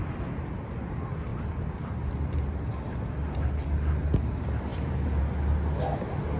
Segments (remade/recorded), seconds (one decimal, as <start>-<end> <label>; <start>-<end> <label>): 0.0-4.7 recorded; 4.7-5.2 remade; 5.2-6.4 recorded